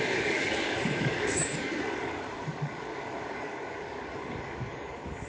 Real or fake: fake